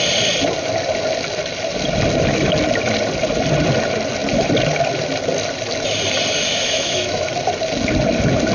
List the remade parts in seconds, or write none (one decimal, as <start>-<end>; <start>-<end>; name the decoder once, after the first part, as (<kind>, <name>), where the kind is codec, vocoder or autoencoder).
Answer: 6.5-7.3 (autoencoder, DAC-VAE)